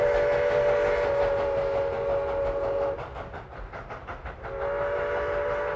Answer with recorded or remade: recorded